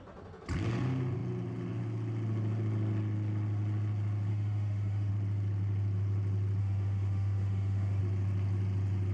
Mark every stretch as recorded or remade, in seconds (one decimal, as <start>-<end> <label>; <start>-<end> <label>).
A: 0.0-4.3 recorded; 4.3-5.1 remade; 5.1-6.6 recorded; 6.6-8.0 remade; 8.0-9.1 recorded